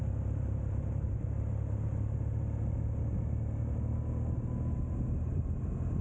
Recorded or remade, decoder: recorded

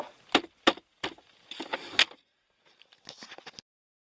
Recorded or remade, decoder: recorded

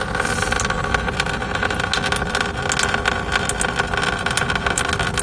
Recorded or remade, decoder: recorded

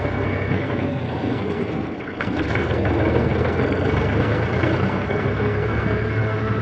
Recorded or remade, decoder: remade, codec, SNAC